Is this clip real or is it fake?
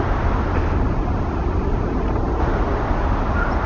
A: real